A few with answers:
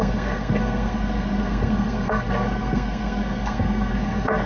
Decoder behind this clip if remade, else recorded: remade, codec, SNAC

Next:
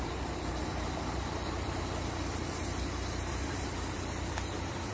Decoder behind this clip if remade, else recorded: remade, vocoder, BigVGAN v2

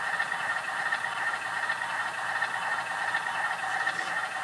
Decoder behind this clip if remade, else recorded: recorded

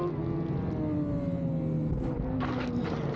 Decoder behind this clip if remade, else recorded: recorded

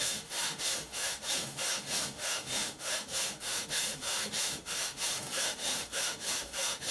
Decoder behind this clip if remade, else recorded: remade, autoencoder, DAC-VAE